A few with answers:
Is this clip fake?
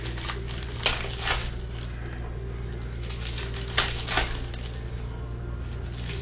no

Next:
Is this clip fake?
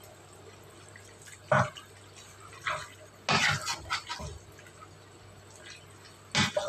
no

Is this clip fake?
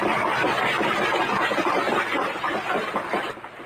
yes